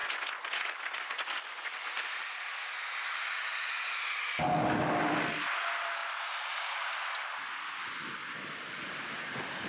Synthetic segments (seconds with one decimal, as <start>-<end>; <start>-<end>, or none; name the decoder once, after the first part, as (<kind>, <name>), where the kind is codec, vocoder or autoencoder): 0.0-1.9 (vocoder, Vocos)